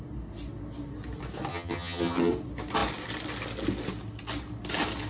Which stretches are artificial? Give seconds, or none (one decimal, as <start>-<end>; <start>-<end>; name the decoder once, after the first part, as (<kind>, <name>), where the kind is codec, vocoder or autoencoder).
1.5-2.3 (vocoder, HiFi-GAN)